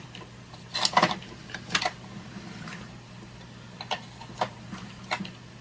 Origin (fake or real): real